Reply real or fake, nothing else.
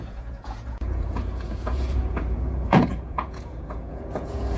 fake